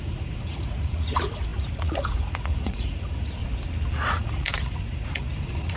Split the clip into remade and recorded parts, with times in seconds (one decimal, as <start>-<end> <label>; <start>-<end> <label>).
0.0-3.4 remade; 3.4-4.1 recorded; 4.1-5.8 remade